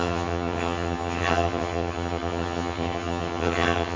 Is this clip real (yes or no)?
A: no